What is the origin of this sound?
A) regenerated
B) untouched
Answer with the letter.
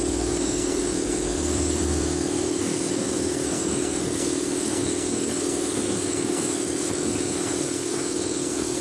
A